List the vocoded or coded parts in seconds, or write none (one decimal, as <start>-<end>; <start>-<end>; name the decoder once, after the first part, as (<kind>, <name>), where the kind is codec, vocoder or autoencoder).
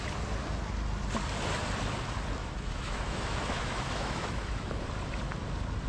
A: 2.4-4.7 (autoencoder, DAC-VAE)